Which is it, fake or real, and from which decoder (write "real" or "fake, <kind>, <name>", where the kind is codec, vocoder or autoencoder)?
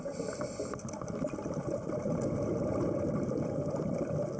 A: real